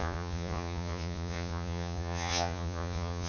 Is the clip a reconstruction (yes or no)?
yes